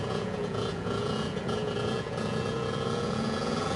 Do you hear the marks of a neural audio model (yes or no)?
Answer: yes